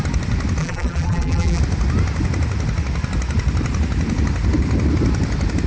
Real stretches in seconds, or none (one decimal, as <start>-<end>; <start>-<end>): 0.0-0.6; 1.6-5.7